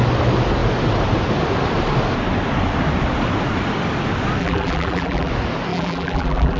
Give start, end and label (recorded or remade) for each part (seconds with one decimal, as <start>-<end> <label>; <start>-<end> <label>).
0.0-4.4 recorded; 4.4-5.3 remade; 5.3-5.7 recorded; 5.7-6.6 remade